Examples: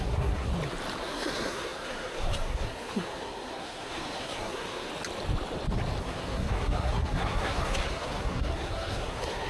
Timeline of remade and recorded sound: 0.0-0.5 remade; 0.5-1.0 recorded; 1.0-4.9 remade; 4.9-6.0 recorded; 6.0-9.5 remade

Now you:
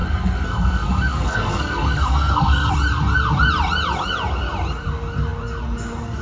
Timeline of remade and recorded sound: 0.0-2.7 remade; 2.7-6.2 recorded

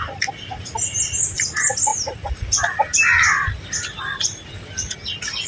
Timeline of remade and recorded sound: 0.0-5.5 recorded

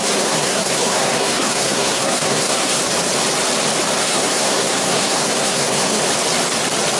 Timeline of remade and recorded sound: 0.0-2.8 remade; 2.8-4.0 recorded; 4.0-6.0 remade; 6.0-7.0 recorded

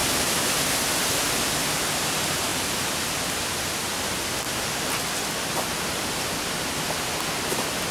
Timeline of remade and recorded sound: 0.0-7.9 recorded

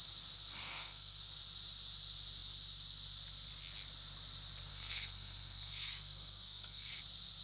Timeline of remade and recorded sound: 0.0-0.6 recorded; 0.6-1.2 remade; 1.2-4.7 recorded; 4.7-6.9 remade; 6.9-7.4 recorded

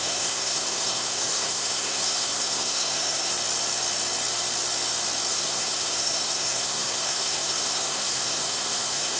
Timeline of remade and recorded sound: 0.0-3.3 remade; 3.3-5.3 recorded; 5.3-9.2 remade

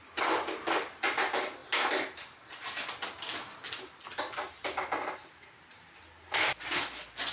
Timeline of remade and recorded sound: 0.0-7.3 recorded